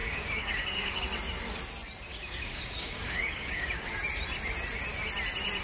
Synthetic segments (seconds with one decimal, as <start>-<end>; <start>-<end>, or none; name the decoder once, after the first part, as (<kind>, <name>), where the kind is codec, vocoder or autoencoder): 0.0-1.0 (codec, DAC); 2.1-3.9